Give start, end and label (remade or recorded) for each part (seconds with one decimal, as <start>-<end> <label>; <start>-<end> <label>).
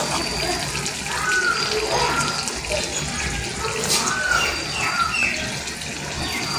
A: 0.0-6.6 recorded